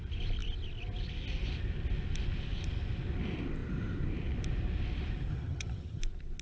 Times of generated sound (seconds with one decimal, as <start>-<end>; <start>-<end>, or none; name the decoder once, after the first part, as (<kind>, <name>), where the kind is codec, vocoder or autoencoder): 5.3-6.0 (vocoder, HiFi-GAN)